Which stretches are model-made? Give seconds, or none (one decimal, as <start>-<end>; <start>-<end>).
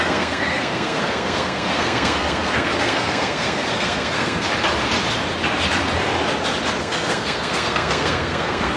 0.0-4.5; 6.8-8.8